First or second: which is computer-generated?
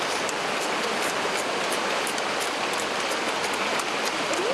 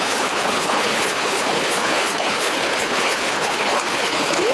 second